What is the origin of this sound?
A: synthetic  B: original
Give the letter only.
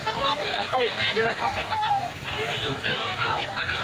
A